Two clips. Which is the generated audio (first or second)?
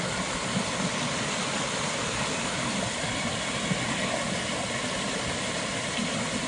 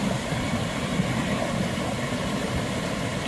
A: second